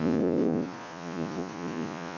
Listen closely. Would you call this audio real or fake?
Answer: fake